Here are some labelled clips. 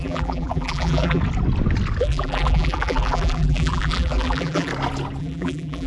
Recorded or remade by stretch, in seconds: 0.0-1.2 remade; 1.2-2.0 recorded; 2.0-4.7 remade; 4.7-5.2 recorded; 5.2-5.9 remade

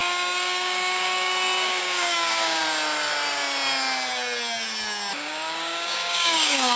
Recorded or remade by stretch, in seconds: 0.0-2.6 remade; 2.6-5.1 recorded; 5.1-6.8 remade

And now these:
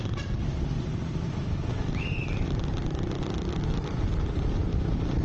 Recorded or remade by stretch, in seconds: 0.0-5.2 recorded